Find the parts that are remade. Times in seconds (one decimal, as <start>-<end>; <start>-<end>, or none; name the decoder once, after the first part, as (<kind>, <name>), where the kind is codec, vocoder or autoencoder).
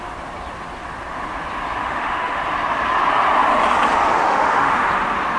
1.8-2.4 (autoencoder, DAC-VAE); 4.2-4.8